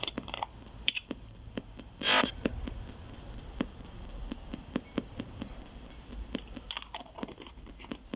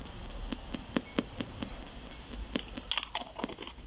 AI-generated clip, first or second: first